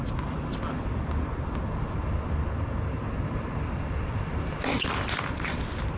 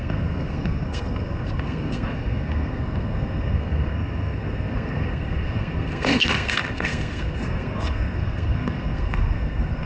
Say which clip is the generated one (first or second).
second